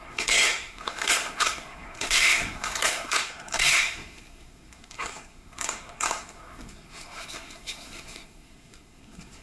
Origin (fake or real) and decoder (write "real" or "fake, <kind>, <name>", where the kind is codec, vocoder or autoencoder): fake, codec, SNAC